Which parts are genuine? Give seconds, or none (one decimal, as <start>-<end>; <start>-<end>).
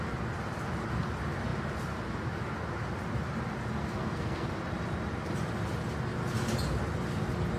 0.0-3.8; 4.5-7.6